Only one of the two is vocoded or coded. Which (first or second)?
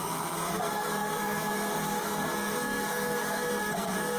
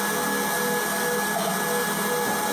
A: first